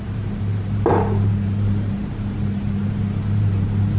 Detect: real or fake fake